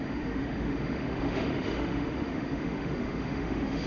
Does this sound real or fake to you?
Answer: fake